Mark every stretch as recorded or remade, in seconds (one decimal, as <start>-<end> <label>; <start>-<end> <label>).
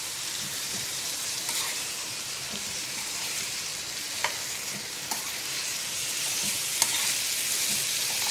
0.0-3.7 remade; 3.7-4.7 recorded; 4.7-7.0 remade; 7.0-7.7 recorded; 7.7-8.3 remade